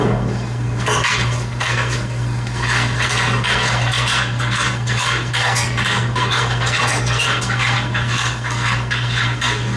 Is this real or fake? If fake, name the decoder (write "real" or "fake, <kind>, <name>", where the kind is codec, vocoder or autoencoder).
fake, codec, SNAC